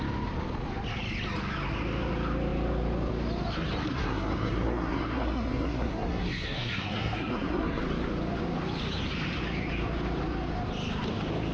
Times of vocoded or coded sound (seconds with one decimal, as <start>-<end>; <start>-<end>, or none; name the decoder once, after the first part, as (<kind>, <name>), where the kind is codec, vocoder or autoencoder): 3.9-7.8 (codec, SNAC)